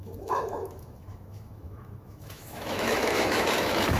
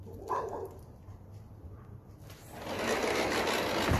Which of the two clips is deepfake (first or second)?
first